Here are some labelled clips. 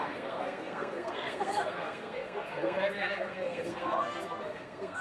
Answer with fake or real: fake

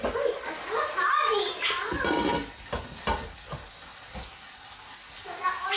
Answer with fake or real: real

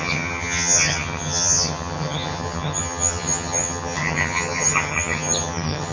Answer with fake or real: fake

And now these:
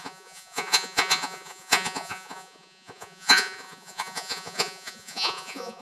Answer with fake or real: fake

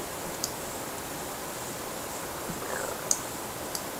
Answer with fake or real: real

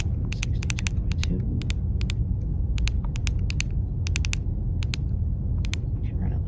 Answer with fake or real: real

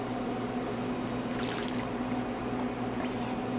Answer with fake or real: real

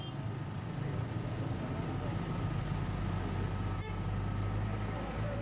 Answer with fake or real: real